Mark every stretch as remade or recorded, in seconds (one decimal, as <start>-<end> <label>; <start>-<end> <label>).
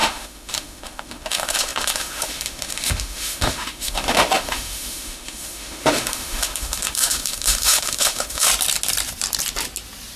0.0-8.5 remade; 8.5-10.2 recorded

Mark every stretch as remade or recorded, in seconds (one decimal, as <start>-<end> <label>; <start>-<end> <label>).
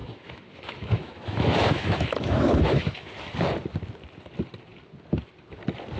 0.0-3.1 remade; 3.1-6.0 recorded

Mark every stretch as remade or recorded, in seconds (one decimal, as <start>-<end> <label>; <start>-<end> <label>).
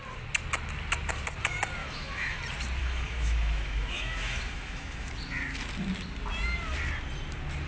0.0-1.8 recorded; 1.8-2.4 remade; 2.4-2.8 recorded; 2.8-5.1 remade; 5.1-7.7 recorded